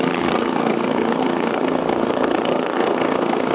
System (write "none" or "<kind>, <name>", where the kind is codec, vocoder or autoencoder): codec, SNAC